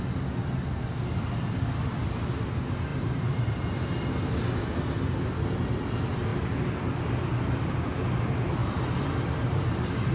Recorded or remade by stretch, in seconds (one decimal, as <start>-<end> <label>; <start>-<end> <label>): 0.0-2.9 recorded; 2.9-3.9 remade; 3.9-8.6 recorded; 8.6-10.1 remade